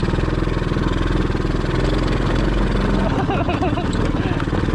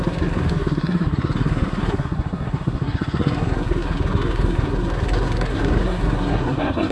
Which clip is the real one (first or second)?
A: first